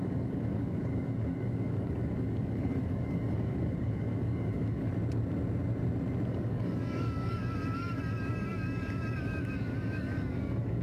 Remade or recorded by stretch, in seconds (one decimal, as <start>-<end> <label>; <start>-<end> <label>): 0.0-4.9 remade; 4.9-6.3 recorded; 6.3-10.8 remade